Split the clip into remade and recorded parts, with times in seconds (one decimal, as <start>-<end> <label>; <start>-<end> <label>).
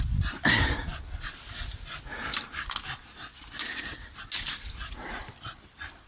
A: 0.0-0.9 recorded; 0.9-1.5 remade; 1.5-3.3 recorded; 3.3-4.2 remade; 4.2-5.2 recorded; 5.2-6.1 remade